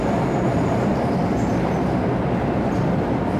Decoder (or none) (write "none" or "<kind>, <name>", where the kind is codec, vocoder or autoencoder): vocoder, BigVGAN v2